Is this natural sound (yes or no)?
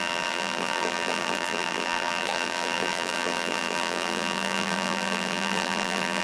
no